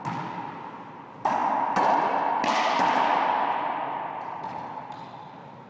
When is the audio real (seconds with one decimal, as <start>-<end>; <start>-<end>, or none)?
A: 0.0-5.7